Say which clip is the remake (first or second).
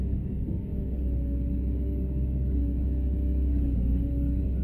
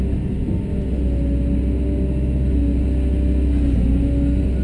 first